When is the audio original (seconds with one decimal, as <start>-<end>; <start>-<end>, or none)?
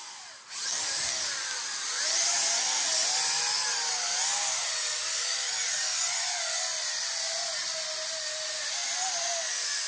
0.0-9.9